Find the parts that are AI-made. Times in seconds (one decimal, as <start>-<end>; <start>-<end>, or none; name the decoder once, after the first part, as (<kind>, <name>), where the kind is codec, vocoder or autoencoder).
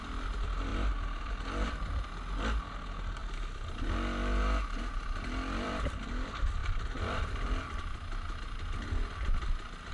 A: 0.7-1.3 (vocoder, BigVGAN v2); 3.2-5.9; 6.6-7.3